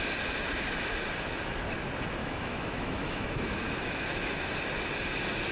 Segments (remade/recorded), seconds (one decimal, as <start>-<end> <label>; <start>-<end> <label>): 0.0-2.2 recorded; 2.2-4.5 remade; 4.5-5.5 recorded